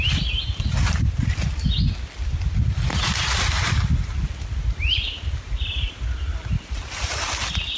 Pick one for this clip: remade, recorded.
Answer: recorded